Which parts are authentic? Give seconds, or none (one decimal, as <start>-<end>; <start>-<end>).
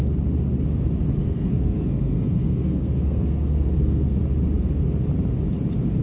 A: 0.0-1.2; 4.2-6.0